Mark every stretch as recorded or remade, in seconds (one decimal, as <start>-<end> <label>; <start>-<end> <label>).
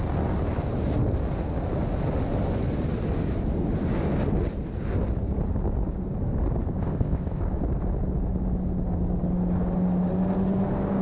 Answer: 0.0-6.8 recorded; 6.8-7.4 remade; 7.4-11.0 recorded